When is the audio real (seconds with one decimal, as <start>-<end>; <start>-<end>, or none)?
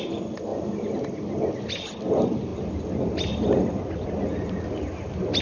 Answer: 0.0-5.4